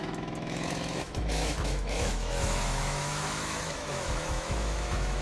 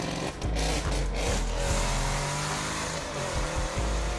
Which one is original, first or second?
second